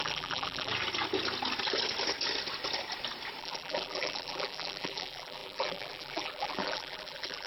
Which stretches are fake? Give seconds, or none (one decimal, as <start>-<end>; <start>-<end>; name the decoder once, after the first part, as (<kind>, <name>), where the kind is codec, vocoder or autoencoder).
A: 0.0-0.7 (vocoder, BigVGAN v2); 3.4-7.5